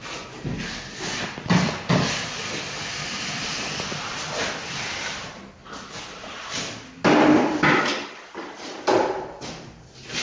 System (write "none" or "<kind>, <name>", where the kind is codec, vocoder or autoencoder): none